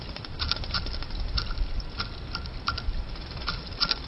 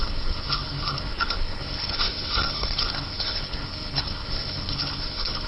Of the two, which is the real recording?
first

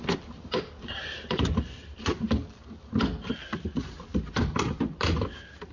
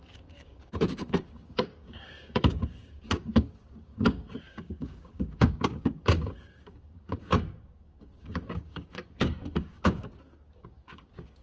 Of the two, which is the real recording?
first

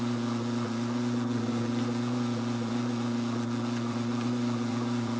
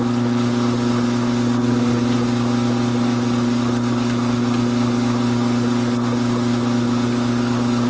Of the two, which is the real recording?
second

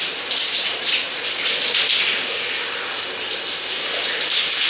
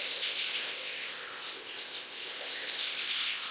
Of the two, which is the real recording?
first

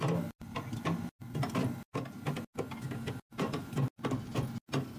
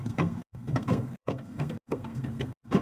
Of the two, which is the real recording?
first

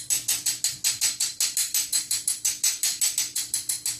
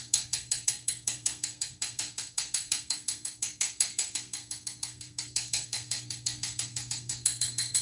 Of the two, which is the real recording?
first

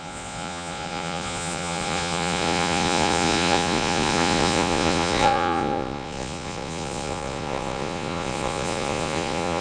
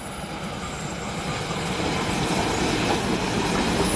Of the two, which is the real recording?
second